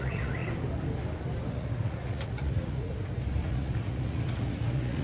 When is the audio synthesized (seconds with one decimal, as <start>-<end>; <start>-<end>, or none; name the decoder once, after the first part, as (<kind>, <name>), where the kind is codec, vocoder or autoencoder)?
0.0-0.4 (vocoder, Vocos); 1.5-2.9; 3.4-5.0